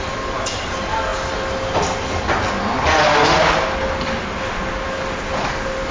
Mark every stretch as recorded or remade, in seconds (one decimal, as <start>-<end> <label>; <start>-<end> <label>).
0.0-5.9 recorded